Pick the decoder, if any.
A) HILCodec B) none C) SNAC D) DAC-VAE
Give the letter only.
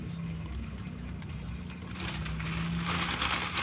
B